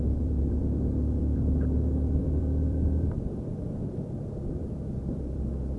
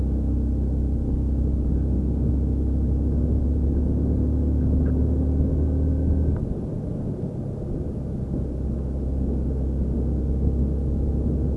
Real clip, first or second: second